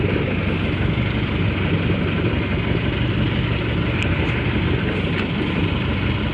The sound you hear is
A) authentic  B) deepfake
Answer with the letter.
A